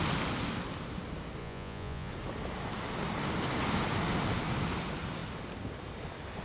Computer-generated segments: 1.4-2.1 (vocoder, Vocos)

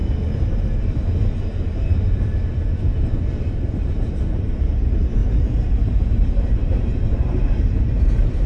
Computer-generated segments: 0.6-2.9 (vocoder, BigVGAN v2); 3.4-5.2; 5.8-8.5

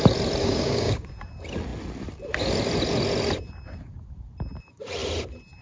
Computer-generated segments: 0.4-1.1 (codec, DAC)

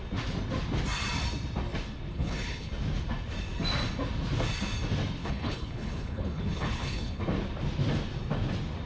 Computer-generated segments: 2.1-2.7 (codec, HILCodec); 5.2-7.2

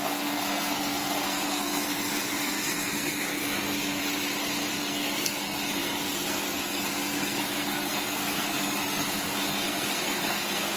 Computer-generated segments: 0.0-4.0 (codec, SNAC); 4.7-10.8